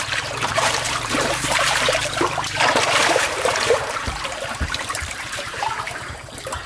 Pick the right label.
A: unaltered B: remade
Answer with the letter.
B